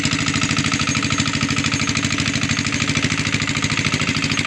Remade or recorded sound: recorded